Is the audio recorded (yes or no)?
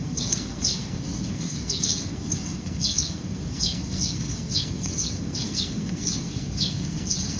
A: no